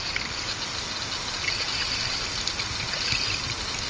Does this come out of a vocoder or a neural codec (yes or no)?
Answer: no